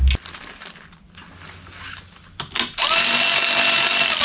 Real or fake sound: real